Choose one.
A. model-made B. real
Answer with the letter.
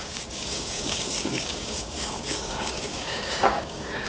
A